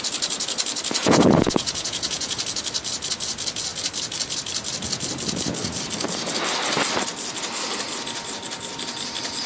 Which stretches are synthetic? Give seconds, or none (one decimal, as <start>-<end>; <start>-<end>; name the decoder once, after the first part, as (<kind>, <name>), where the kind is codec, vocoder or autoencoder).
1.0-2.4 (vocoder, Vocos)